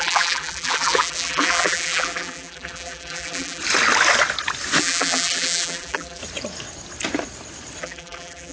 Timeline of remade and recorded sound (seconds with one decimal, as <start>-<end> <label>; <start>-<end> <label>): 0.0-3.6 remade; 3.6-4.8 recorded; 4.8-6.2 remade; 6.2-7.8 recorded; 7.8-8.5 remade